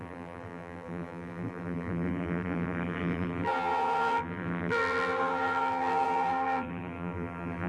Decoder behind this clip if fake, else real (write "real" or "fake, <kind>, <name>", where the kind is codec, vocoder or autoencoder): fake, vocoder, BigVGAN v2